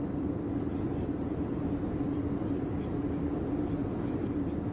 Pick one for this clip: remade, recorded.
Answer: recorded